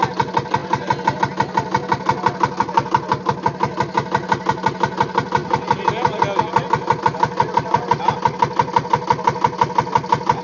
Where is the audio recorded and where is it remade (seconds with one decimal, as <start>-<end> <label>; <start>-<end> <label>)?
0.0-10.4 recorded